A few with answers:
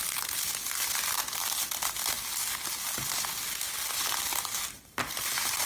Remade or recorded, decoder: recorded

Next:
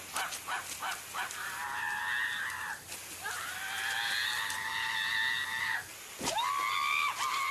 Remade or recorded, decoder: recorded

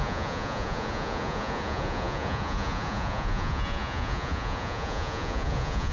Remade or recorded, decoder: remade, vocoder, Vocos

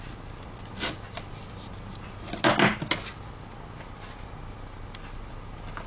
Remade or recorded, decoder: recorded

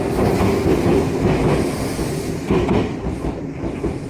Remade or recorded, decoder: recorded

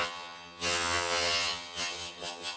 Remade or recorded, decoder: remade, vocoder, HiFi-GAN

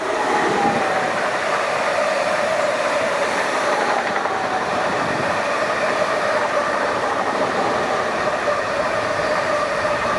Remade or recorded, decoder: remade, vocoder, BigVGAN v2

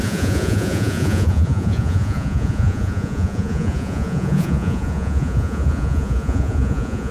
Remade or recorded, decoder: remade, vocoder, Vocos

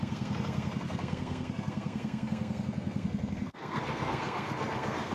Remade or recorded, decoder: remade, codec, SNAC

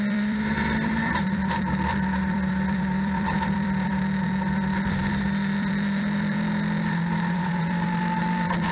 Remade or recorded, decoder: remade, vocoder, BigVGAN v2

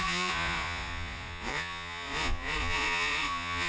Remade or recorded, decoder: remade, vocoder, Vocos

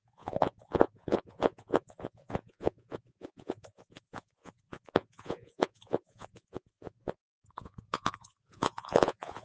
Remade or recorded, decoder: remade, vocoder, Vocos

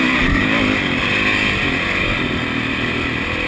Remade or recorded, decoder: recorded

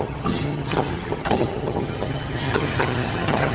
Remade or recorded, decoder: remade, vocoder, HiFi-GAN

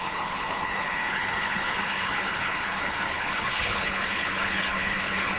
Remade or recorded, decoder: remade, codec, HILCodec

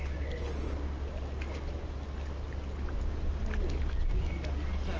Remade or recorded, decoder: recorded